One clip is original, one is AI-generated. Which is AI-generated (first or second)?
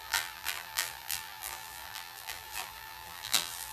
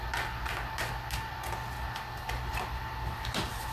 first